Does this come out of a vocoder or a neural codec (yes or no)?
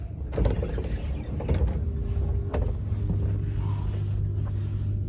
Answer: no